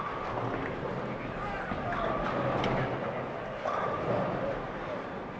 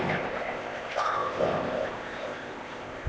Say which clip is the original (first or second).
first